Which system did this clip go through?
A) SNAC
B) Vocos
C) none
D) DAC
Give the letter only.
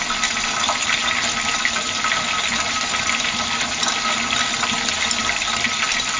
C